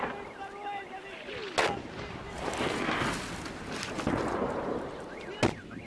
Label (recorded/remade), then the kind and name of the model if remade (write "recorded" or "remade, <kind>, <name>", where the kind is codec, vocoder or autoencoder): recorded